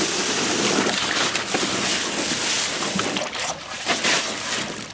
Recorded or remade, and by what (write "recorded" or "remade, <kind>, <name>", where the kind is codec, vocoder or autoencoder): recorded